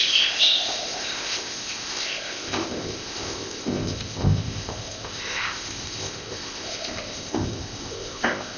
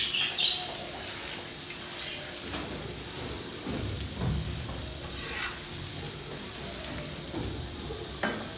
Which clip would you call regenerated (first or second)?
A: first